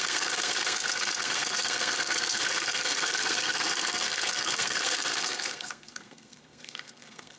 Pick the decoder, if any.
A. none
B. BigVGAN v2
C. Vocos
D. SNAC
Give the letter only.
D